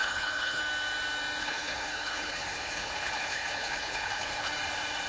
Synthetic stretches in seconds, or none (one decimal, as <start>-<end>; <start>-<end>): 0.0-0.6; 1.4-4.5